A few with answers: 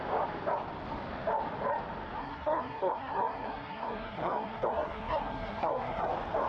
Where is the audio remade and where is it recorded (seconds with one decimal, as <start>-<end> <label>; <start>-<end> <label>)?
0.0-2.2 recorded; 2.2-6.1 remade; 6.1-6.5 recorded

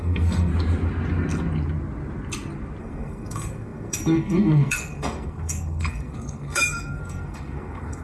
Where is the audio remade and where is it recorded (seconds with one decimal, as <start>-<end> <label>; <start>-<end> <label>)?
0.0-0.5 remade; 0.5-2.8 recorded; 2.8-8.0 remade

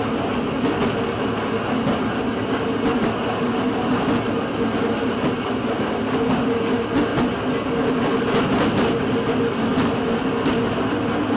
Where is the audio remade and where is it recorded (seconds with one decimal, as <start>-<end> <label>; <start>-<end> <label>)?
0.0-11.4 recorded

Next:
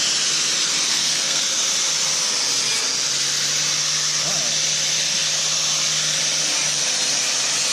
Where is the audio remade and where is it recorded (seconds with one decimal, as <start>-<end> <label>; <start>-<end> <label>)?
0.0-0.9 recorded; 0.9-1.4 remade; 1.4-7.7 recorded

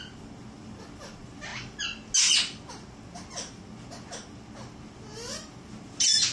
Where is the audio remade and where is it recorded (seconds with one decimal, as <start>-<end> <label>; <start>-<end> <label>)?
0.0-6.3 recorded

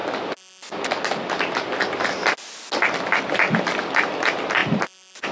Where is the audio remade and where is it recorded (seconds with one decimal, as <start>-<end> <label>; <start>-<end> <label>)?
0.0-5.3 recorded